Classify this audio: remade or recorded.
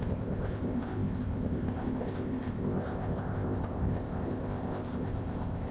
remade